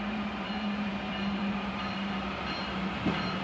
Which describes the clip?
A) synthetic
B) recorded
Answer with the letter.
A